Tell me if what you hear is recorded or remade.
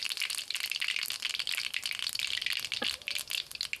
recorded